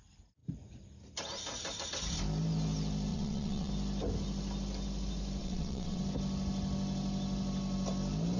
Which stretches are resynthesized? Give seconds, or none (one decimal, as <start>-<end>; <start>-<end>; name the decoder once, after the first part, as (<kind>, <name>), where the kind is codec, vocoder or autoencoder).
3.1-3.7 (vocoder, WaveNeXt); 5.4-6.0